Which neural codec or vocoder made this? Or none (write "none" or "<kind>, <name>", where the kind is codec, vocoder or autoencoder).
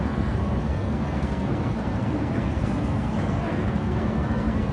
codec, SNAC